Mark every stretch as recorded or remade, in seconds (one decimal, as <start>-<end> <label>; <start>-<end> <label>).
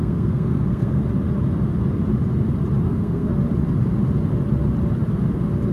0.0-1.0 remade; 1.0-2.8 recorded; 2.8-3.3 remade; 3.3-5.7 recorded